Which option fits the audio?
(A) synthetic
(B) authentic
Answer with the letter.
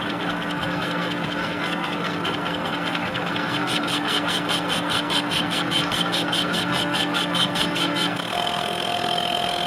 A